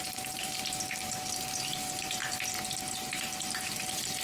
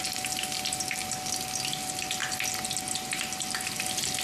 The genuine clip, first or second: second